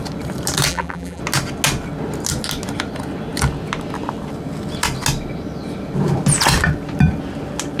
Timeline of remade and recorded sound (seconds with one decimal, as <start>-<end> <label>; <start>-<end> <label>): 0.0-0.7 recorded; 0.7-1.2 remade; 1.2-7.8 recorded